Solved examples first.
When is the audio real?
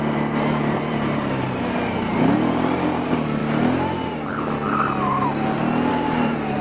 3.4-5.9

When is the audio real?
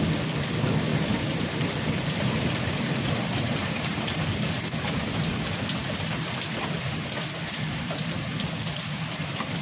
0.0-0.9; 4.5-9.6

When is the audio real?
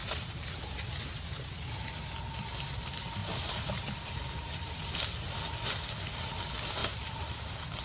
0.6-3.2; 4.9-6.8; 7.3-7.8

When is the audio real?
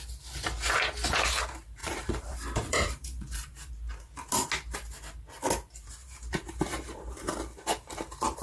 0.0-1.8; 3.7-6.0; 7.3-8.4